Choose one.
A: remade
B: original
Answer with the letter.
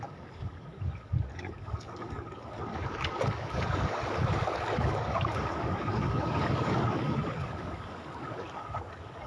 A